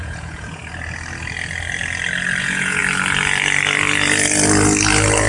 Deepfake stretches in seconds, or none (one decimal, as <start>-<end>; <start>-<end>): 0.0-0.6; 2.4-2.8